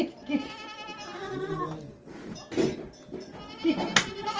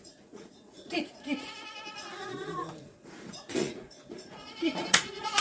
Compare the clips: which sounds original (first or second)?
first